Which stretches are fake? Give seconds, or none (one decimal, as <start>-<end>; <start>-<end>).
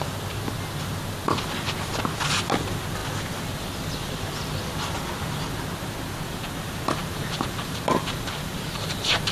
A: 7.0-9.3